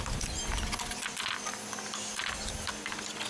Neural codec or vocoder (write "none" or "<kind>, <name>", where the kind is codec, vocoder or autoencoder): none